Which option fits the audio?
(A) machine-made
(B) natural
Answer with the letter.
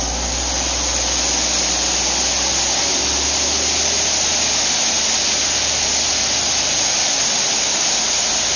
B